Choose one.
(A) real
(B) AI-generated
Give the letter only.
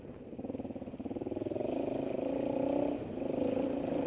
B